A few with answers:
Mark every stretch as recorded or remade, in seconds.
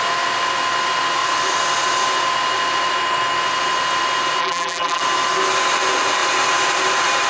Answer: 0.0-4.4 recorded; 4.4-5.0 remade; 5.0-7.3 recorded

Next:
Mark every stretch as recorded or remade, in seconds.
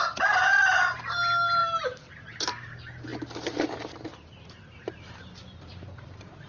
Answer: 0.0-6.5 remade